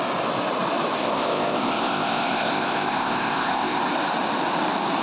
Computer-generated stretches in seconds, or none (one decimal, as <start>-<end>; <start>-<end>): 1.0-3.8